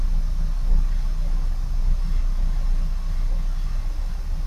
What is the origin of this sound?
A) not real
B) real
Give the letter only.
B